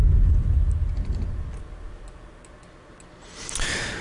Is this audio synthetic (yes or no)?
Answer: no